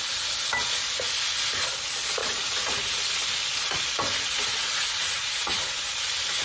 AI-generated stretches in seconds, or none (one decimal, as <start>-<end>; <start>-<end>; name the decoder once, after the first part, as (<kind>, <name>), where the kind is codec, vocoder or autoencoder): 2.2-2.9 (vocoder, Vocos); 4.6-5.8